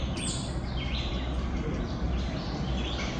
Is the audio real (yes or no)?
yes